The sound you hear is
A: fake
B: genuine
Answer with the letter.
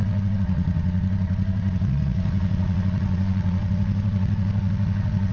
A